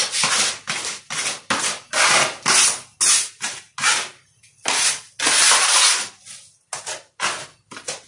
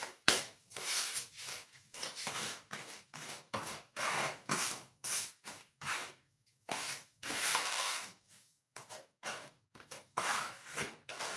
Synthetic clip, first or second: second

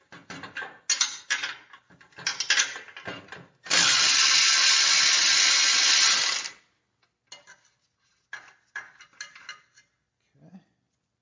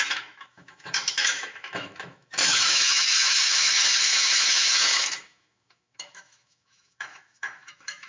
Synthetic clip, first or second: second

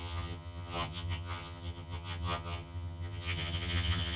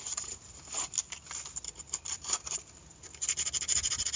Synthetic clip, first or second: first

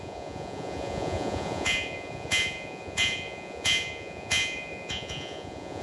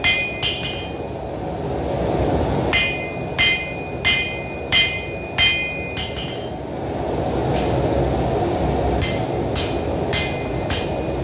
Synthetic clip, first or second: first